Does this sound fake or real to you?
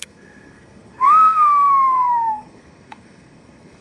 fake